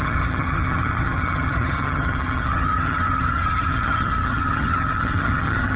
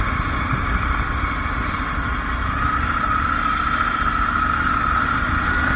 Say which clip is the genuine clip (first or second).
second